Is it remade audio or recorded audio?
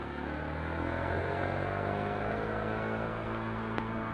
remade